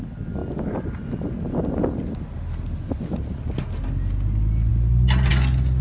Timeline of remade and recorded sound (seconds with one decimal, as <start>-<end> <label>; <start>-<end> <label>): 0.0-5.8 recorded